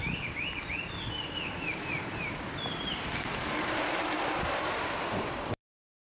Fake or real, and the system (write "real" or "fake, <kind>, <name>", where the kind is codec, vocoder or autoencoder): fake, vocoder, BigVGAN v2